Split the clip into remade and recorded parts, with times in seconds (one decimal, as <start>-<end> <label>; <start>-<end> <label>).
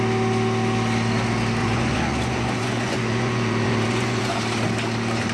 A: 0.0-1.6 recorded; 1.6-4.4 remade; 4.4-5.3 recorded